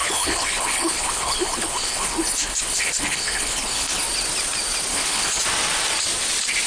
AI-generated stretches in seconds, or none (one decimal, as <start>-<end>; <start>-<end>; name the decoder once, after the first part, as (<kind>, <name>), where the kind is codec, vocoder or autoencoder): 0.0-4.0 (codec, HILCodec); 4.9-5.4